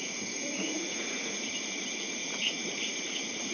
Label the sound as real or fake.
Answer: fake